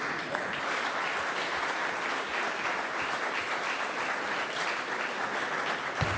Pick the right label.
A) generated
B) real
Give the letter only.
B